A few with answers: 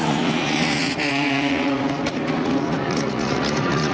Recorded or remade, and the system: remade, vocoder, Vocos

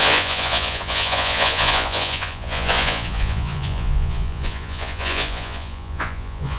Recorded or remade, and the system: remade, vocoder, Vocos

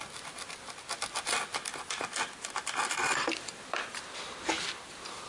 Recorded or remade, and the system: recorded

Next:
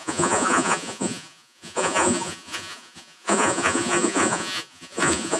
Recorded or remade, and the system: remade, vocoder, Vocos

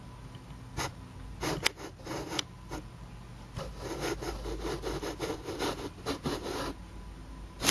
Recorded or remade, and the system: recorded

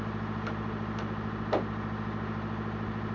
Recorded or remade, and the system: recorded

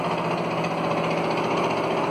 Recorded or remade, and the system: recorded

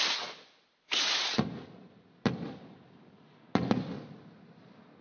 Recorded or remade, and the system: recorded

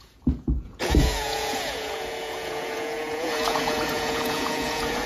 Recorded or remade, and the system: remade, vocoder, Vocos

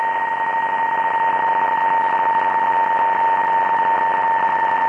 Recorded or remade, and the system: recorded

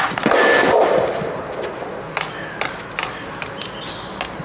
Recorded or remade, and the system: recorded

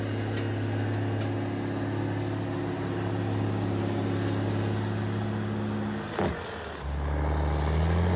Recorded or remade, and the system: recorded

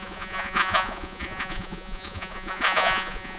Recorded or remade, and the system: remade, vocoder, Vocos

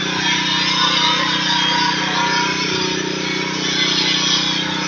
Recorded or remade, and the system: recorded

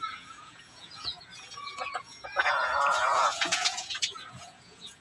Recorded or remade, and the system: remade, vocoder, Vocos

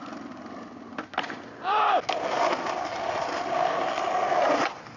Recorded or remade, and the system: recorded